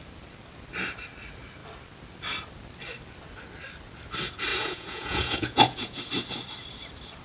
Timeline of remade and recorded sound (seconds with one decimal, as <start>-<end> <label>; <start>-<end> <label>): 0.0-4.5 recorded; 4.5-6.0 remade; 6.0-7.2 recorded